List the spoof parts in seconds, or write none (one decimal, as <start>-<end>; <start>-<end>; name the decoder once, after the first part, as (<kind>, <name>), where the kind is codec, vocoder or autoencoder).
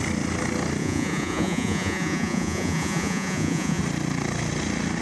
0.8-3.8 (vocoder, Vocos)